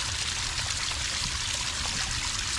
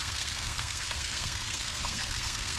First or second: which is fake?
second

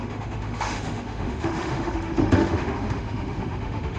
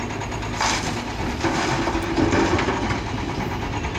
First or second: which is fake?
first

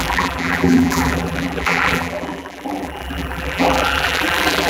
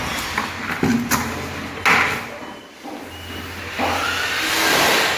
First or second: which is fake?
first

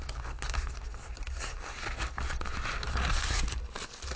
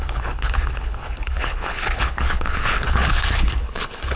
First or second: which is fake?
second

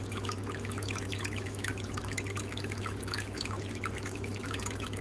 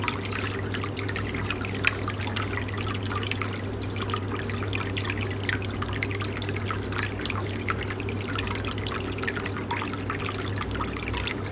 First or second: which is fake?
first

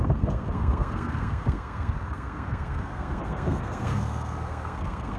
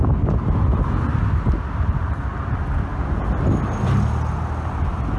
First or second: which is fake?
first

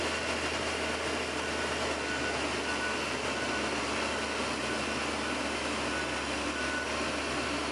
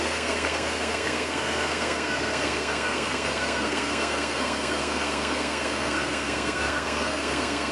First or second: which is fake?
second